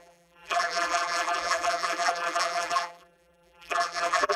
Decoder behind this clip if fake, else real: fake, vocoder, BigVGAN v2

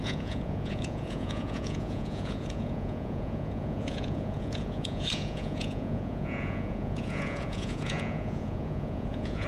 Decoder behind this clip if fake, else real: fake, vocoder, Vocos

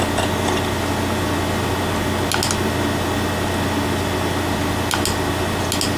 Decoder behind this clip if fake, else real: real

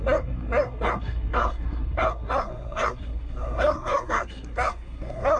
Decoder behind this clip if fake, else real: fake, codec, SNAC